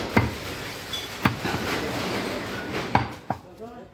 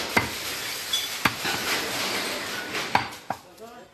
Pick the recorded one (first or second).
second